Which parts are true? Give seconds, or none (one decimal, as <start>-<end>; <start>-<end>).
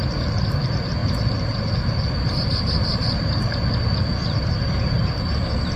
0.0-2.9; 4.0-5.8